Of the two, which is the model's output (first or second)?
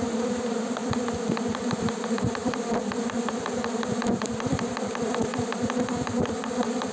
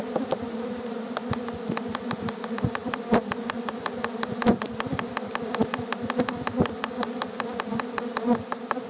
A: first